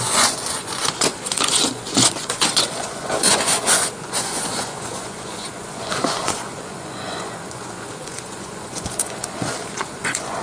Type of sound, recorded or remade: remade